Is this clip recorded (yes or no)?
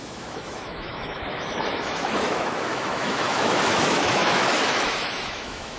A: no